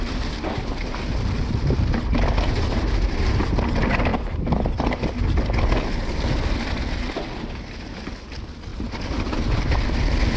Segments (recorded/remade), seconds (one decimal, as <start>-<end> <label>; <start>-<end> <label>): 0.0-10.4 recorded